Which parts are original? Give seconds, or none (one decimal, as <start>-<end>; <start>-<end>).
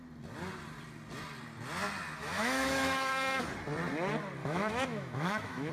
0.0-2.2; 3.4-4.4